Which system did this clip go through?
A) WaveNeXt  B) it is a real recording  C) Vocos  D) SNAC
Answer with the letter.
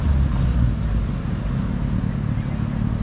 B